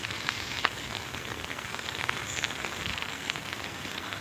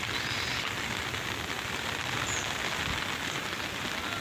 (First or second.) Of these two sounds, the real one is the second